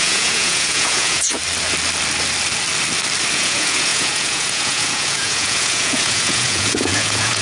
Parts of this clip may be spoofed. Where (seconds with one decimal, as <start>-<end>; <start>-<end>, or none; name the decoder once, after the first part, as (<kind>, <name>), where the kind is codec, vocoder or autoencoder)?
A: 0.0-1.4 (vocoder, Vocos); 3.3-7.4